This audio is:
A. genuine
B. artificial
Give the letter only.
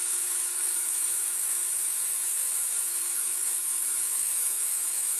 B